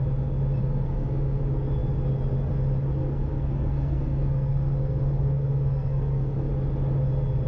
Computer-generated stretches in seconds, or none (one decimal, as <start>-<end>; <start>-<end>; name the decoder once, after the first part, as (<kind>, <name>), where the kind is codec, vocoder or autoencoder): 0.6-1.4 (codec, SNAC); 3.0-6.5